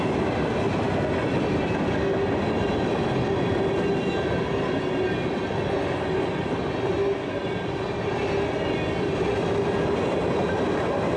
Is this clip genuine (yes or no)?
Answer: yes